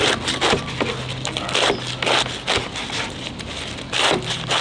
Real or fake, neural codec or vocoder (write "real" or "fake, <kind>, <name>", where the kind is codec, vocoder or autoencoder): real